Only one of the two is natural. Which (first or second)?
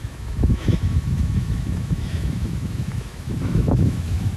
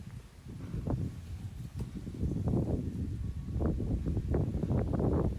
second